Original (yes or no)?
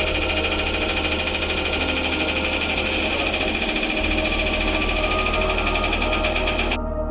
yes